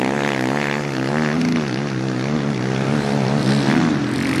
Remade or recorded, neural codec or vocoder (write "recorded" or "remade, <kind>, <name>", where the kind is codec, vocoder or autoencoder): recorded